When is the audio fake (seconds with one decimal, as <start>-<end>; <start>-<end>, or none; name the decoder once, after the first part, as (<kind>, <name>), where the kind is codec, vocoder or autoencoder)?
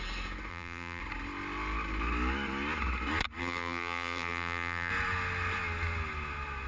0.5-1.0 (vocoder, BigVGAN v2); 3.4-4.9